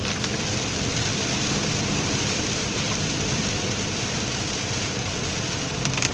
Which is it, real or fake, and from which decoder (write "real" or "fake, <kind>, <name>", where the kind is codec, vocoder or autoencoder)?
fake, vocoder, BigVGAN v2